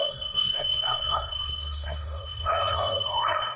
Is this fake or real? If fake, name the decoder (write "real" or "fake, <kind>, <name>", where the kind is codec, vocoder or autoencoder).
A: fake, codec, SNAC